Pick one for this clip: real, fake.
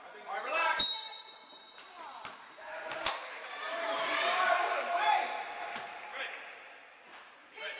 fake